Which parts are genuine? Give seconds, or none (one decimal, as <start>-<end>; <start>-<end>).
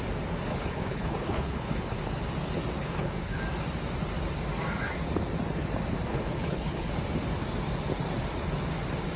0.0-0.5; 2.0-2.8; 3.4-6.1; 6.9-9.2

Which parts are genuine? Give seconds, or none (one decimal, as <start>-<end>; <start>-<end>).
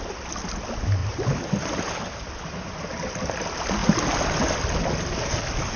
0.0-5.8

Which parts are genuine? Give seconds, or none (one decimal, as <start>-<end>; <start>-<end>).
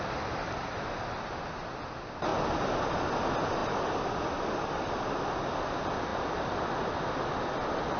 0.0-8.0